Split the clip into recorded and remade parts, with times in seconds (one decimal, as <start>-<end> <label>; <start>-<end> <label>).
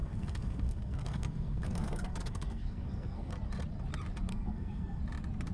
0.0-3.3 remade; 3.3-4.3 recorded; 4.3-5.0 remade; 5.0-5.5 recorded